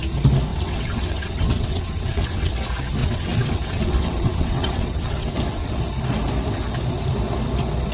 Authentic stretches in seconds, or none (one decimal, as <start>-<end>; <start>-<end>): 0.0-0.5; 2.5-3.0; 5.8-7.9